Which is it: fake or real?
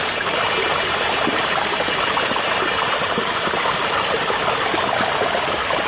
real